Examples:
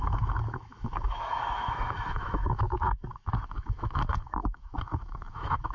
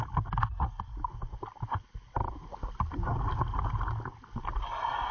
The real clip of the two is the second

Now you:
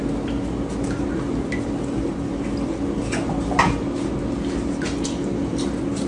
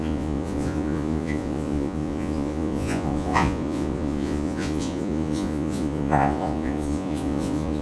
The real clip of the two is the first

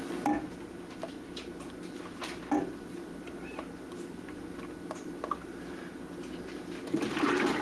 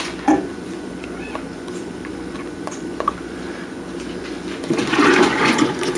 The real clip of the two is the first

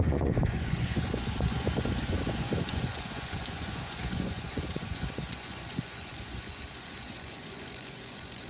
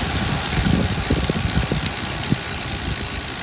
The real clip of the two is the second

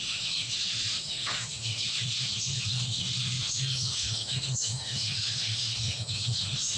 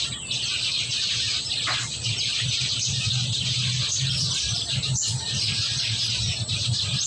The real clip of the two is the second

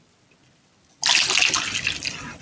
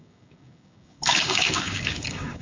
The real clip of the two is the first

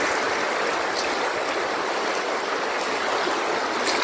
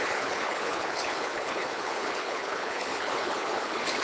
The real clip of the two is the first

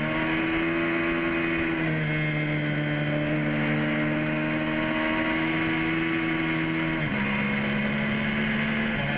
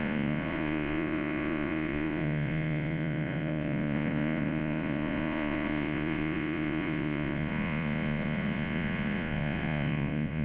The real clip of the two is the first